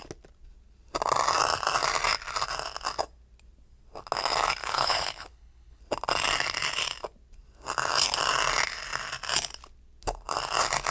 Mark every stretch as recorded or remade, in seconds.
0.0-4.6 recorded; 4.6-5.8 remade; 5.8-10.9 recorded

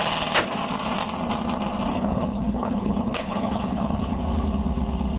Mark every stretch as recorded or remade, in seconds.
0.0-1.9 recorded; 1.9-4.2 remade; 4.2-5.2 recorded